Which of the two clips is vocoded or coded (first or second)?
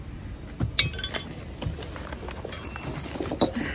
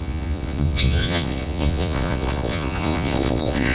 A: second